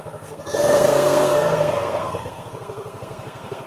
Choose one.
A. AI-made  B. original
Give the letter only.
A